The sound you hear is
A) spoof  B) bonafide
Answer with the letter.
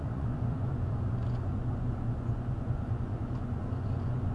A